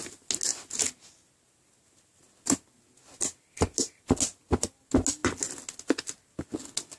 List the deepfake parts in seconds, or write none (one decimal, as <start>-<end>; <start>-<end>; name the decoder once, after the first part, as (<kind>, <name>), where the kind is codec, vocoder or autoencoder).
none